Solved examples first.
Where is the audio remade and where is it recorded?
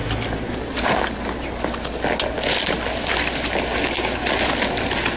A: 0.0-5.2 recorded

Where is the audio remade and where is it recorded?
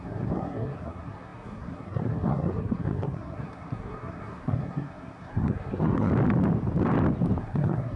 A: 0.0-6.1 remade; 6.1-7.4 recorded; 7.4-8.0 remade